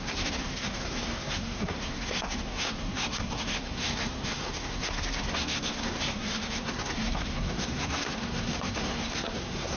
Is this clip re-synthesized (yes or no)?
yes